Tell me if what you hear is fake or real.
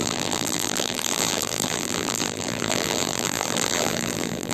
fake